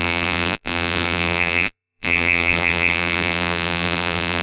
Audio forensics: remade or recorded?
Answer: remade